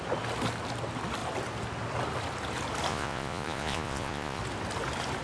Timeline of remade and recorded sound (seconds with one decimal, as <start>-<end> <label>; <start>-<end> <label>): 0.0-2.9 recorded; 2.9-4.4 remade; 4.4-5.2 recorded